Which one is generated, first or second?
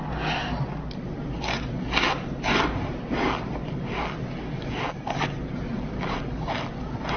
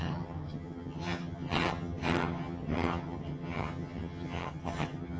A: second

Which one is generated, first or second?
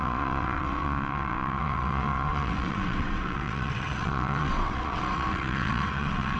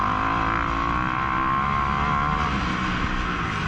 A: first